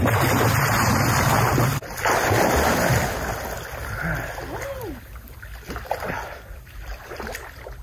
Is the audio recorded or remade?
recorded